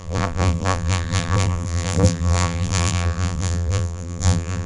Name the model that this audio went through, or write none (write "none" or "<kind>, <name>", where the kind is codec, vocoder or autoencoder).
vocoder, BigVGAN v2